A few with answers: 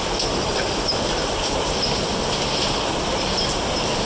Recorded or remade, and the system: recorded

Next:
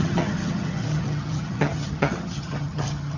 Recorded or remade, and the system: remade, vocoder, HiFi-GAN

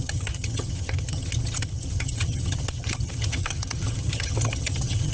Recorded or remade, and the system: remade, vocoder, HiFi-GAN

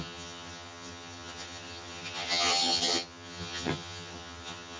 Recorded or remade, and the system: remade, vocoder, HiFi-GAN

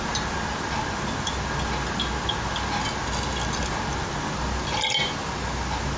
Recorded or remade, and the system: recorded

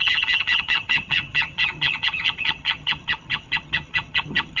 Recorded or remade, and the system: remade, vocoder, HiFi-GAN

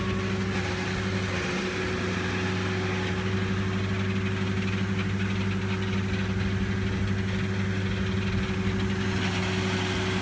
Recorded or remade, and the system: recorded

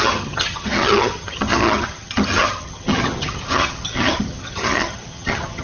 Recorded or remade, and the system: remade, vocoder, HiFi-GAN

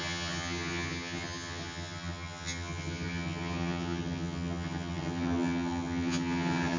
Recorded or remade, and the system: remade, vocoder, HiFi-GAN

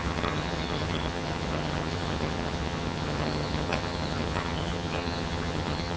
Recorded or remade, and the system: remade, vocoder, HiFi-GAN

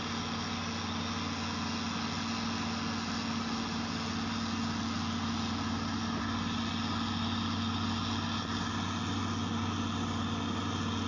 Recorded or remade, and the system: recorded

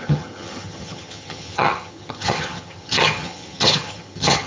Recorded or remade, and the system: remade, vocoder, HiFi-GAN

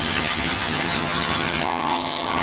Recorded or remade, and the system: remade, vocoder, HiFi-GAN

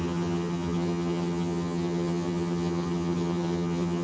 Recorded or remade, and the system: remade, vocoder, HiFi-GAN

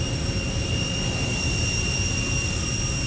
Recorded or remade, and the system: recorded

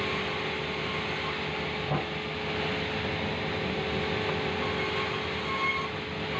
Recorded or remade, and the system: recorded